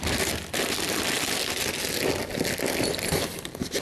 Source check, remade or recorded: recorded